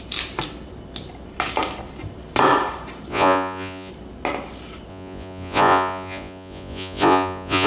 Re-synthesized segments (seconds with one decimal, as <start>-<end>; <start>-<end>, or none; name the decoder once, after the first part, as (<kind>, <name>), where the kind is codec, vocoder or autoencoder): 3.1-3.9 (vocoder, Vocos); 4.9-7.7